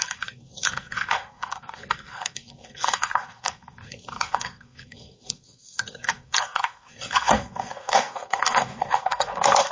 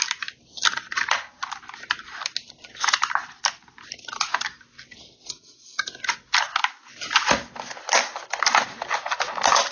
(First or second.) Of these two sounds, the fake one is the first